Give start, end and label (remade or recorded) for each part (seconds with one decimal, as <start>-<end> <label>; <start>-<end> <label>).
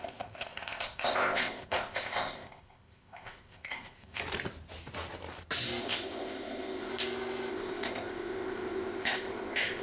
0.0-4.2 remade; 4.2-5.8 recorded; 5.8-6.9 remade; 6.9-7.5 recorded; 7.5-9.8 remade